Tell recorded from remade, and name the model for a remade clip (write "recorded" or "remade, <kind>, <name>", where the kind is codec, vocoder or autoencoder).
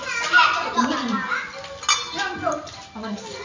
recorded